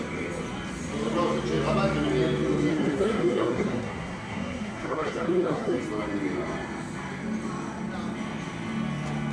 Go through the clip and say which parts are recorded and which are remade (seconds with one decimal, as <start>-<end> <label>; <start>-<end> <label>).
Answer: 0.0-2.7 recorded; 2.7-5.8 remade; 5.8-9.3 recorded